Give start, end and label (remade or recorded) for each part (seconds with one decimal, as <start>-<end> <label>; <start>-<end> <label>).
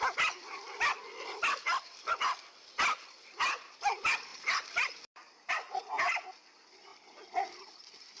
0.0-4.3 recorded; 4.3-5.5 remade; 5.5-8.2 recorded